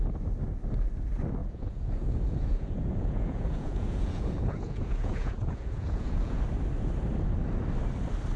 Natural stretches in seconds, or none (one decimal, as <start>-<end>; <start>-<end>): 0.0-1.4; 6.4-8.4